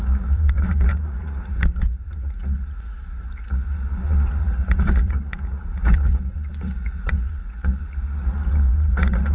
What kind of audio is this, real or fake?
fake